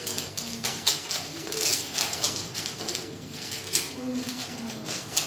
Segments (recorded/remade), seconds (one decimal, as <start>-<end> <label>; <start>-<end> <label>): 0.0-5.3 remade